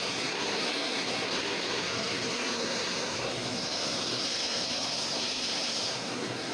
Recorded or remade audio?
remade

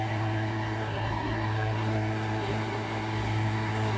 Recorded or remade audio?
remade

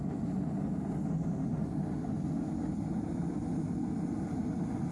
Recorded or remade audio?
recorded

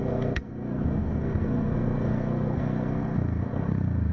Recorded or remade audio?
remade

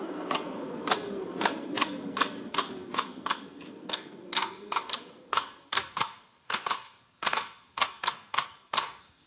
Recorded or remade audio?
remade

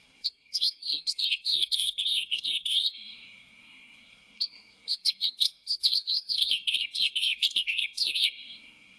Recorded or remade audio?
remade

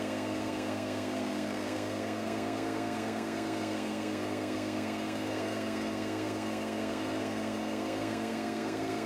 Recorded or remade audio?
remade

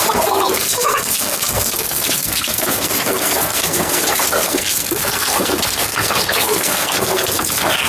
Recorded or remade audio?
remade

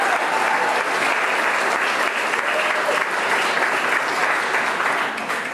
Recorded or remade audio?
recorded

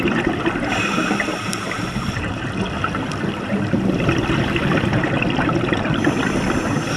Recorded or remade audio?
recorded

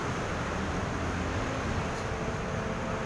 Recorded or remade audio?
recorded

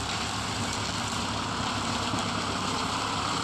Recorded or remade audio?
recorded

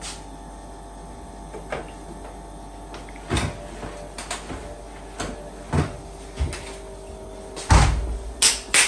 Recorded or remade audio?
recorded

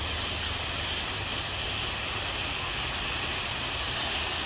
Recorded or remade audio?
recorded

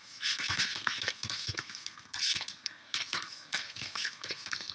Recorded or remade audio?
remade